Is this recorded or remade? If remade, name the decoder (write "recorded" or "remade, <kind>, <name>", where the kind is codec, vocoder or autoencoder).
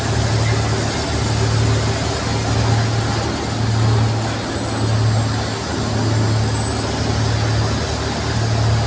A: recorded